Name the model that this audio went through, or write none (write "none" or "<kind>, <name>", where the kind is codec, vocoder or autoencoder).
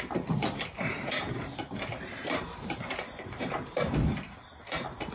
vocoder, BigVGAN v2